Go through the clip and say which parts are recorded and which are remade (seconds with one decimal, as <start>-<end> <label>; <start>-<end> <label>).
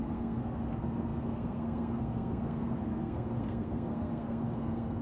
0.0-5.0 remade